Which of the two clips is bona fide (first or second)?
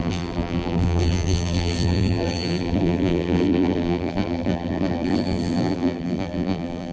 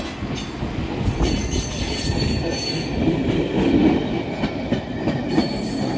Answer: second